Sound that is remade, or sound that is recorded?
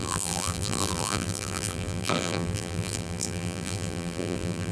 remade